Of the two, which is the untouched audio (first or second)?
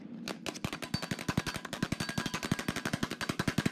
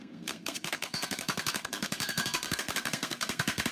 first